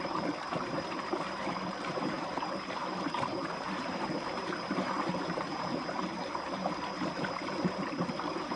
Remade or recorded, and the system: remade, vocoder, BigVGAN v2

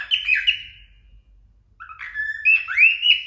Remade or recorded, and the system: recorded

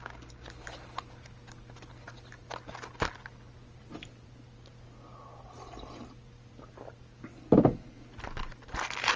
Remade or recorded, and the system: recorded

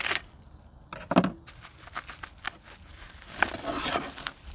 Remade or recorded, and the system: recorded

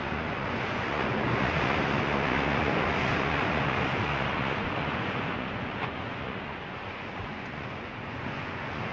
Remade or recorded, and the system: remade, vocoder, Vocos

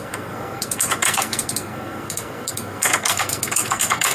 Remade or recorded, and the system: remade, codec, SNAC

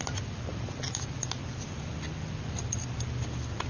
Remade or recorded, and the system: recorded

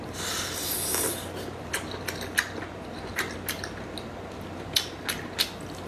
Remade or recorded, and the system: recorded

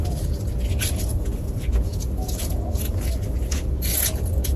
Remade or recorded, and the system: recorded